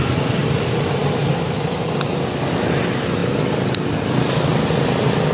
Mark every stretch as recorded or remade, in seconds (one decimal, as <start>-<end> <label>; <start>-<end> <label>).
0.0-5.3 recorded